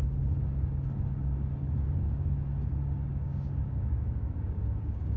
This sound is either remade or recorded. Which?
remade